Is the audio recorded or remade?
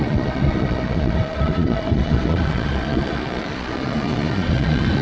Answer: remade